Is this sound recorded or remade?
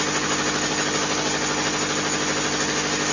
recorded